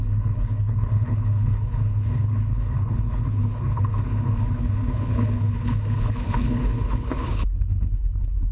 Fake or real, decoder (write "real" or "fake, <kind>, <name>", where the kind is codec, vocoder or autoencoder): fake, codec, HILCodec